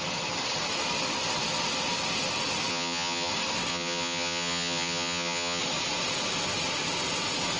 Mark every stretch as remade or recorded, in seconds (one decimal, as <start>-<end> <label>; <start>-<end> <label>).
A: 0.0-2.7 recorded; 2.7-3.3 remade; 3.3-3.7 recorded; 3.7-5.6 remade; 5.6-7.6 recorded